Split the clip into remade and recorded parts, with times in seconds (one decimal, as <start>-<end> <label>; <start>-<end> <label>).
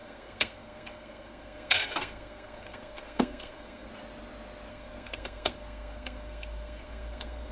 0.0-3.9 remade; 3.9-4.7 recorded; 4.7-7.5 remade